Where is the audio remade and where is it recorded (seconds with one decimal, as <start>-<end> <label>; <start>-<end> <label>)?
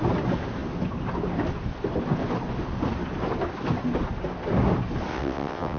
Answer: 0.0-5.1 recorded; 5.1-5.8 remade